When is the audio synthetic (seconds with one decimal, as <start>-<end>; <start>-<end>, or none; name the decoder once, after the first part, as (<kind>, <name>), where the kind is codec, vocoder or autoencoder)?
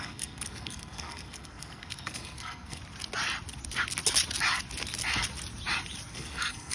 0.0-2.8 (codec, SNAC); 6.1-6.7